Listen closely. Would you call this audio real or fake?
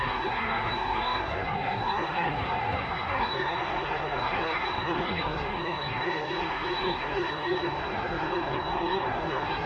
fake